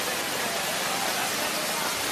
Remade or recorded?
recorded